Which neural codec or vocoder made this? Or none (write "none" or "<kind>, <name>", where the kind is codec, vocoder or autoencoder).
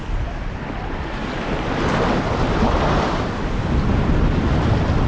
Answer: none